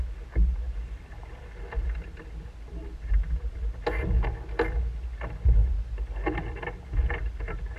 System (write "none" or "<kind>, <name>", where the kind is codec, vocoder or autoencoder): none